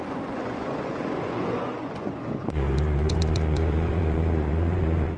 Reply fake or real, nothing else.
fake